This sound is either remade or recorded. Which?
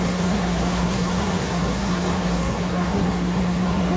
remade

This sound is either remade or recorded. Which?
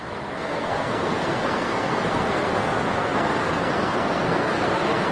remade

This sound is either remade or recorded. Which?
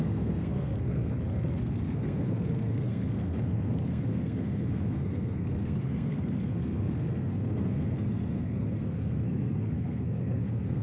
remade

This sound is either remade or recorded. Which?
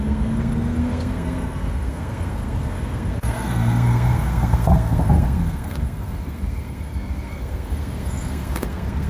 remade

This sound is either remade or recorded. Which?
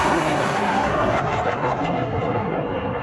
remade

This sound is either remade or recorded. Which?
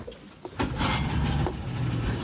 recorded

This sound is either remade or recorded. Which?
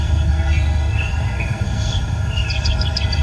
remade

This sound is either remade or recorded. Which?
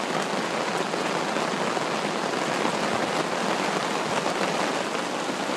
recorded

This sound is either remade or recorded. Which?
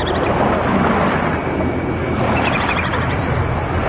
recorded